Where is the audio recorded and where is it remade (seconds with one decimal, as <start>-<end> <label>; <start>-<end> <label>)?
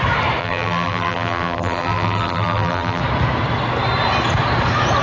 0.0-0.4 recorded; 0.4-3.0 remade; 3.0-5.0 recorded